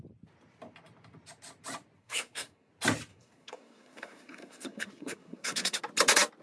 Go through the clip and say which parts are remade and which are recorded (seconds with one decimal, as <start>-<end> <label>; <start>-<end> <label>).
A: 0.0-2.0 recorded; 2.0-2.7 remade; 2.7-3.1 recorded; 3.1-5.8 remade; 5.8-6.4 recorded